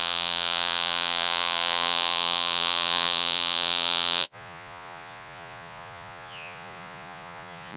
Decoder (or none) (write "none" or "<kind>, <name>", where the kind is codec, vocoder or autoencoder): vocoder, Vocos